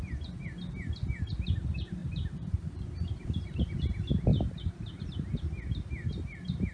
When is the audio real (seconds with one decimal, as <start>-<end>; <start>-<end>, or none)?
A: 0.0-2.0; 3.8-4.3; 5.0-6.7